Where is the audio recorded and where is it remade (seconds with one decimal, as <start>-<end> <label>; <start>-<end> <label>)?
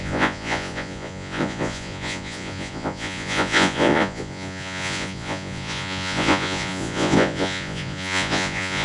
0.0-8.8 remade